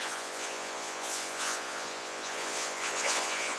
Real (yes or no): no